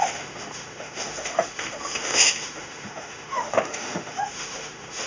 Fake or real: fake